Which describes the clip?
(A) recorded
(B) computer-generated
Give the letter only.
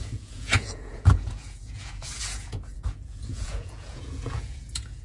B